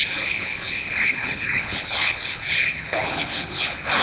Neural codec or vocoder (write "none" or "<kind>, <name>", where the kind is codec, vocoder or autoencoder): codec, HILCodec